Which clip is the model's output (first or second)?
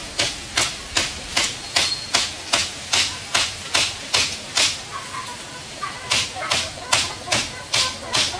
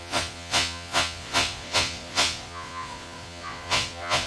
second